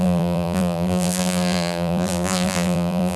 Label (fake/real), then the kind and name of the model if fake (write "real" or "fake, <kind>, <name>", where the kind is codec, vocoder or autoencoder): fake, vocoder, BigVGAN v2